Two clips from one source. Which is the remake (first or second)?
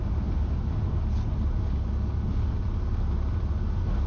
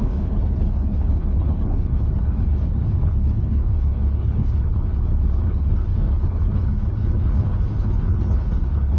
second